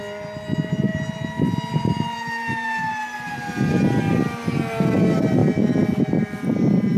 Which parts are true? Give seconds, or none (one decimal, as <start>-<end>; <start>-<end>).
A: 0.0-7.0